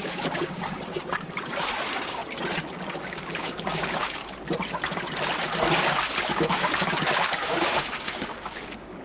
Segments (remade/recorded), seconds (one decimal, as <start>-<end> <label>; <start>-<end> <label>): 0.0-2.2 remade; 2.2-3.0 recorded; 3.0-4.2 remade; 4.2-6.3 recorded; 6.3-9.0 remade